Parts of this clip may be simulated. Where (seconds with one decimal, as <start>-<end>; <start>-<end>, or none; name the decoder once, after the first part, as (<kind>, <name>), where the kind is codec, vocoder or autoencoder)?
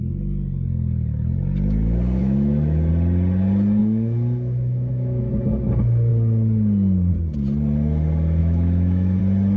2.2-2.9 (autoencoder, DAC-VAE); 3.8-5.2; 8.4-9.2